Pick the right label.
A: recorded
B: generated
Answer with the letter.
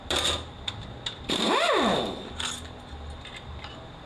A